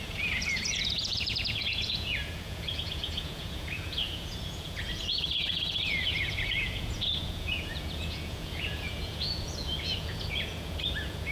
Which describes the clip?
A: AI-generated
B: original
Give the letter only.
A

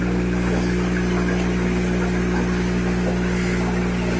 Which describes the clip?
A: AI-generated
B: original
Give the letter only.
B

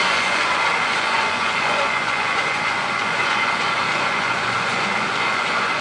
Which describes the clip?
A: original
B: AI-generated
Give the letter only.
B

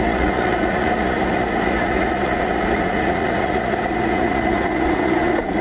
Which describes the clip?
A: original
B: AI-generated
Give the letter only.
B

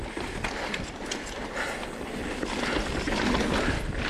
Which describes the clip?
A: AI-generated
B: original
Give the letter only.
B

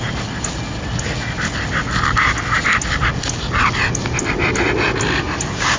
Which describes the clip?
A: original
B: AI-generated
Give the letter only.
A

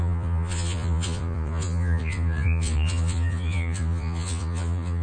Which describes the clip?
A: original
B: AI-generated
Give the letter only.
B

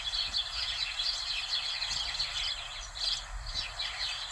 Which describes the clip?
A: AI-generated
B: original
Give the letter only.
B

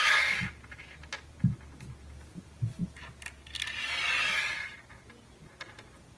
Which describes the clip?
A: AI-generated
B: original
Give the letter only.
B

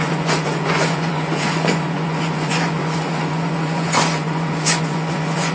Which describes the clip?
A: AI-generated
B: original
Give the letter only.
A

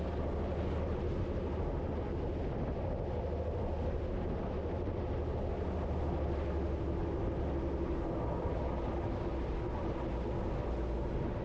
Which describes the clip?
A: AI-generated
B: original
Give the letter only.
B